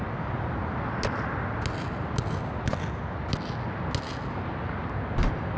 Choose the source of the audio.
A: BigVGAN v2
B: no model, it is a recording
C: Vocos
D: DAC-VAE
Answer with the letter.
B